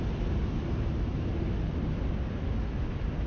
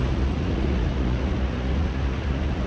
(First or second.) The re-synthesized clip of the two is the second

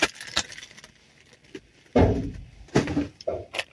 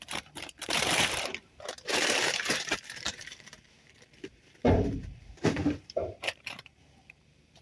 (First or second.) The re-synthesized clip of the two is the second